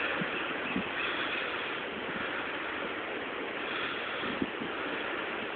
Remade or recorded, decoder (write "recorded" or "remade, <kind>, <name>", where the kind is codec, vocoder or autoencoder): recorded